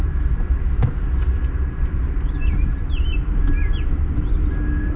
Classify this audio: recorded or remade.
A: recorded